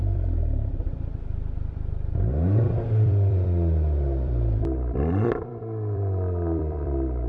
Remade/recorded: remade